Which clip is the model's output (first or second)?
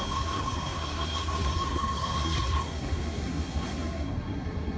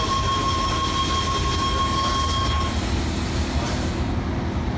first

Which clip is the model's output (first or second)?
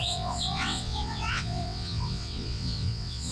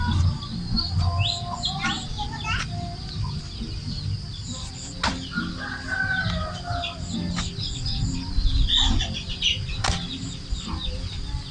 first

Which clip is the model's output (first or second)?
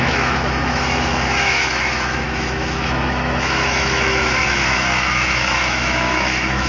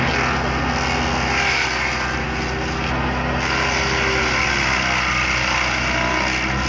first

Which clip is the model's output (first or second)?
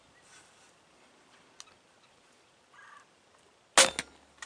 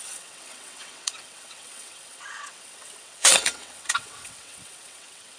second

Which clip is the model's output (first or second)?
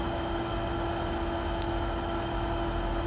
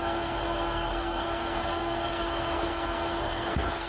second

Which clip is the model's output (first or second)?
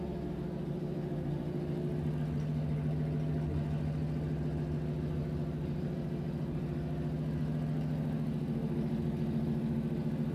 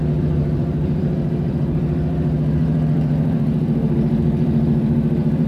second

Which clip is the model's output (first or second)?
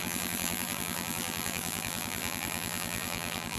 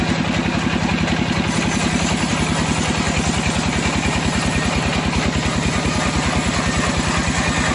first